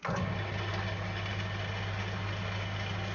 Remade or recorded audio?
recorded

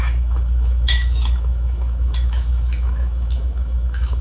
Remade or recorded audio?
remade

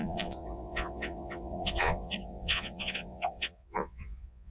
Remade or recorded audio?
remade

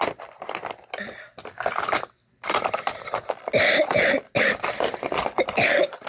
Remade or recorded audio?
recorded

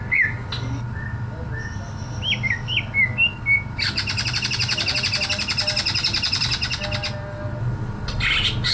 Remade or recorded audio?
recorded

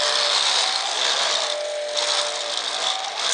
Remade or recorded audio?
recorded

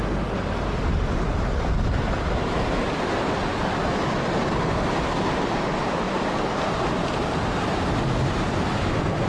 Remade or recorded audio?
recorded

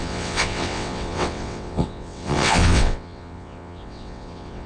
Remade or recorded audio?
remade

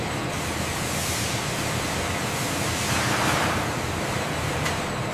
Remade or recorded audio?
recorded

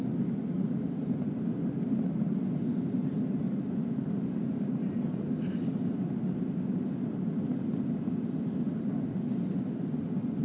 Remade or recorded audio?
recorded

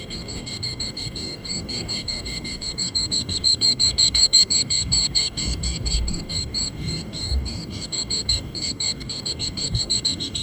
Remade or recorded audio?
remade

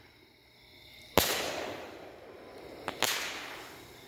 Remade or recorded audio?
recorded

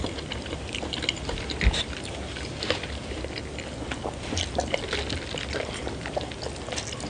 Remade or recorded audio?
recorded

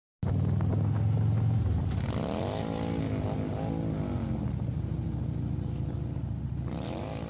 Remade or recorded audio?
recorded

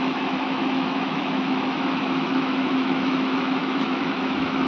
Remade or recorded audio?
remade